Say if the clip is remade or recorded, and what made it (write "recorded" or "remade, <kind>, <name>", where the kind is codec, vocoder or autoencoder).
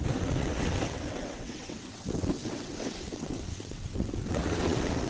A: remade, vocoder, WaveNeXt